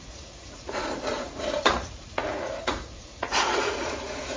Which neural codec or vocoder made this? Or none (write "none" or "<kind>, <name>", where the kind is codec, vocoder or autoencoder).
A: vocoder, Vocos